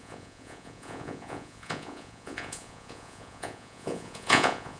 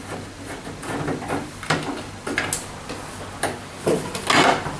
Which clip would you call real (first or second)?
second